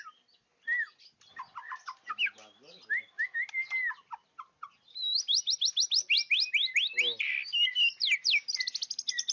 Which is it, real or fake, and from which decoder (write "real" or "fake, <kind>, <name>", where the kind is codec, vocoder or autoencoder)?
real